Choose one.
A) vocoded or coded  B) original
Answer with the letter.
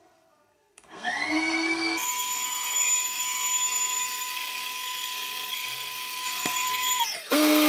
A